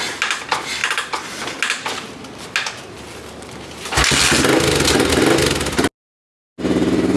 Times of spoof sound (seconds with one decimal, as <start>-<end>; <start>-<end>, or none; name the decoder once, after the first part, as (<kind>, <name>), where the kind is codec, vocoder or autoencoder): none